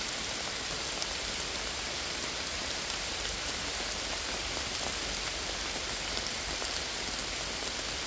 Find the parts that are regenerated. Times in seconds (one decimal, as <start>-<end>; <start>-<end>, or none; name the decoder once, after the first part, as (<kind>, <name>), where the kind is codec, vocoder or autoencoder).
none